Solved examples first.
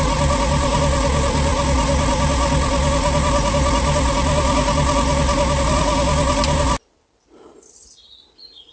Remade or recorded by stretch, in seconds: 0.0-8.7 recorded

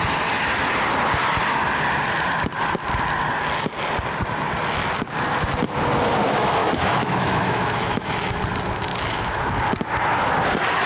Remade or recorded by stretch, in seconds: 0.0-6.6 recorded; 6.6-8.4 remade; 8.4-8.9 recorded; 8.9-9.5 remade; 9.5-10.9 recorded